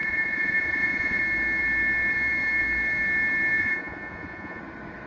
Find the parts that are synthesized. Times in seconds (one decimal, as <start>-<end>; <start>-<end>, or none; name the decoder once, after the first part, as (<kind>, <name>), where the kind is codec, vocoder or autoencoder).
0.0-1.2 (vocoder, Vocos); 3.6-4.6

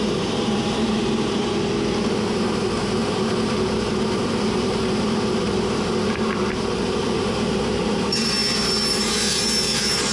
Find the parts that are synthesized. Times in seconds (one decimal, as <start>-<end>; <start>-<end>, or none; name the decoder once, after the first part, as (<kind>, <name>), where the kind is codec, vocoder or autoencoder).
0.0-1.4 (vocoder, BigVGAN v2); 2.1-10.1

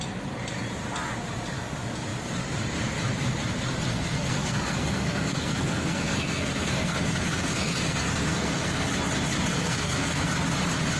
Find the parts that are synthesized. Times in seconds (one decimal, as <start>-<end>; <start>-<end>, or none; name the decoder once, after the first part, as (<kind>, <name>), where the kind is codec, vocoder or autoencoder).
3.9-8.9 (codec, SNAC); 9.5-10.3

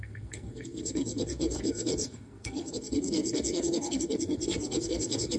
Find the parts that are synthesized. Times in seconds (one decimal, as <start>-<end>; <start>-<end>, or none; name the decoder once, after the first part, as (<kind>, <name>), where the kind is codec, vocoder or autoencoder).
0.0-5.4 (codec, SNAC)

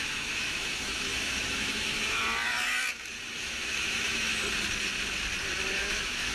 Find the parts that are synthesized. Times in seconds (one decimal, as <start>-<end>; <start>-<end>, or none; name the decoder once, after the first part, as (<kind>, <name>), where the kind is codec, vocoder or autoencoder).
0.0-2.2 (autoencoder, DAC-VAE); 3.4-4.3; 5.8-6.3

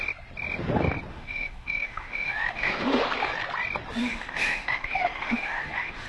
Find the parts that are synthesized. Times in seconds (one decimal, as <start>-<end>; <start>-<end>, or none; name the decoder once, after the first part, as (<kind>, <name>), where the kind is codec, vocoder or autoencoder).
1.1-3.0 (autoencoder, DAC-VAE); 4.0-6.1